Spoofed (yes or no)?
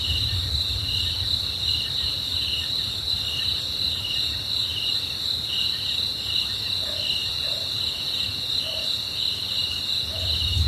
no